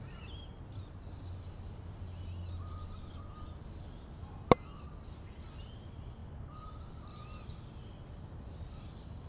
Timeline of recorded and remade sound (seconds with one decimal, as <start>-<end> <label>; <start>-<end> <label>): 0.0-9.3 recorded